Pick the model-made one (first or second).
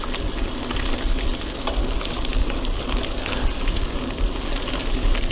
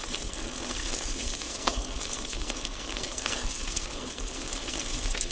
second